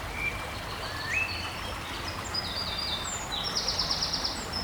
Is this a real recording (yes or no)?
yes